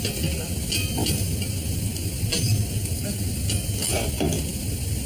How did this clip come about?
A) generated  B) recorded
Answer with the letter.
B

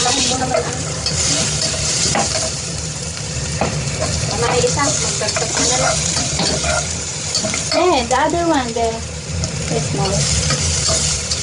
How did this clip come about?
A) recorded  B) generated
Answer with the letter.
B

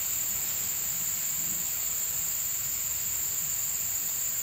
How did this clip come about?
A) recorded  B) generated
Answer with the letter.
A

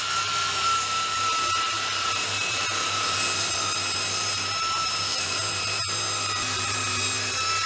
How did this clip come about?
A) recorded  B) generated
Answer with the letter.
B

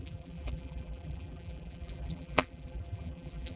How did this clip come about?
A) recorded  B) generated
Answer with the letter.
B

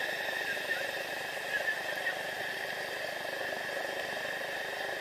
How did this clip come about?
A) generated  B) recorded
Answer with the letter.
B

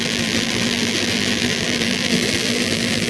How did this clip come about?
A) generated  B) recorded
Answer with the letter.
A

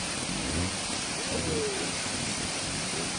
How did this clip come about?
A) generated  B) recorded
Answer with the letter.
A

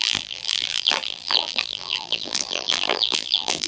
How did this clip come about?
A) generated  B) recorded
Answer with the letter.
A